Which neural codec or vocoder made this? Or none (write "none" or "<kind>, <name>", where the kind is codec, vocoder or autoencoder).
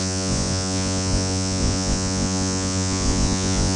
vocoder, Vocos